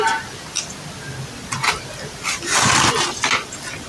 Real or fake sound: real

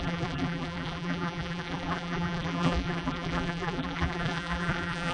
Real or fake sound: fake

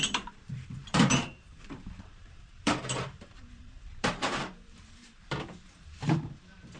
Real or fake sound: fake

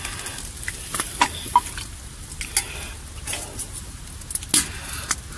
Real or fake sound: real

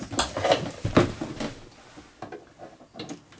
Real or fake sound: real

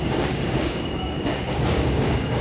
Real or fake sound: fake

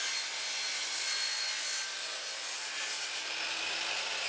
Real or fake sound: real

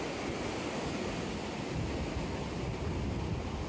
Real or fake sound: real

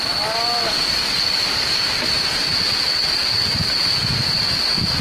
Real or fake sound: real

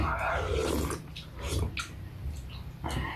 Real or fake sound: real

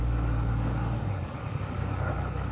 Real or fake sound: fake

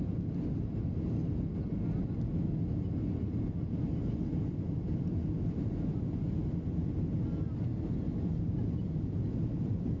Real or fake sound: real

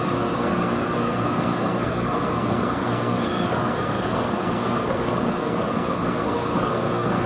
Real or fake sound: fake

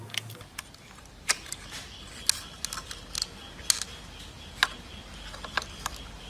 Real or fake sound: real